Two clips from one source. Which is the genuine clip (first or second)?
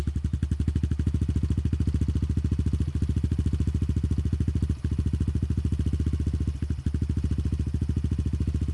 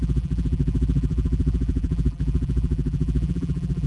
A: first